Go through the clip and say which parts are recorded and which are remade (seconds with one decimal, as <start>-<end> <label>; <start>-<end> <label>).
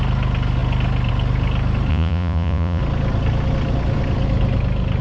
0.0-1.9 recorded; 1.9-2.8 remade; 2.8-5.0 recorded